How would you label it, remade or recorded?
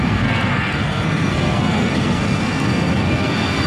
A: remade